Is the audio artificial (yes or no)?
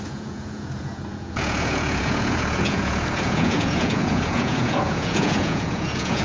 yes